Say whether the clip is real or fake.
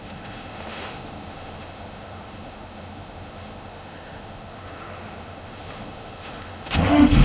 fake